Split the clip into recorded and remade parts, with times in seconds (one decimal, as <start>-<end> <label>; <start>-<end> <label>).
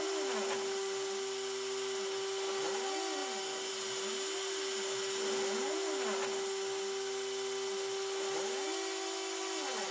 0.0-9.9 recorded